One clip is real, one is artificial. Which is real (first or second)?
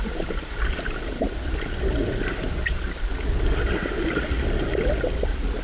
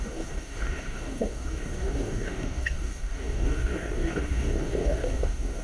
first